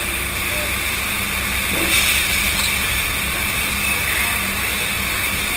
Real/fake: real